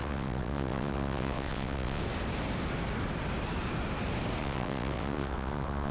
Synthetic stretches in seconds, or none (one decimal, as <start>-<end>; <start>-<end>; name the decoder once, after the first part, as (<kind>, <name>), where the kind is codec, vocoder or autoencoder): 0.0-2.0 (vocoder, WaveNeXt); 4.4-5.9

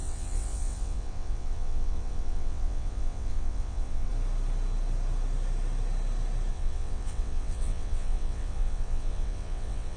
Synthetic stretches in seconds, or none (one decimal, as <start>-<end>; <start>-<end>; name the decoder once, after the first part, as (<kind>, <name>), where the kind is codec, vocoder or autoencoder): 0.0-4.1 (vocoder, WaveNeXt); 6.5-10.0

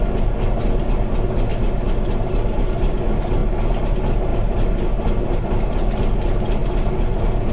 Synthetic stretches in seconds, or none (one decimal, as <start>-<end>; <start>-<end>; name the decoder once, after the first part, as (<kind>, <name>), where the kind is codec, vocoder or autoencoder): none

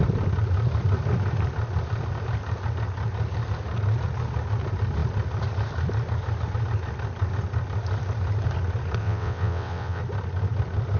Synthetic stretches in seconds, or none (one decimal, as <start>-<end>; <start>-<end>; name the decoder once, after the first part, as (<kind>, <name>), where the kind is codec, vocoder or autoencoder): 9.0-10.0 (vocoder, WaveNeXt)

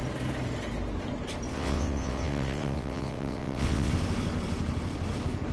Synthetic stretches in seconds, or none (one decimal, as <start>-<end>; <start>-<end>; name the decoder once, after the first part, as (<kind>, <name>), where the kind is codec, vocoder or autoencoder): 1.5-3.9 (vocoder, WaveNeXt)

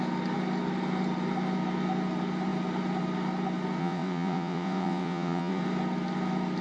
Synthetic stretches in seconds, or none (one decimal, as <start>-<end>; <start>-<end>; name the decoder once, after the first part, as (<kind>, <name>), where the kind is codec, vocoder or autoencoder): 3.8-5.6 (vocoder, WaveNeXt)